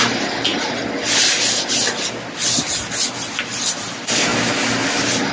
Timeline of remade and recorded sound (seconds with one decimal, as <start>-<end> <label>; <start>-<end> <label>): 0.0-5.3 recorded